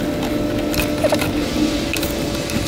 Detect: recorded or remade recorded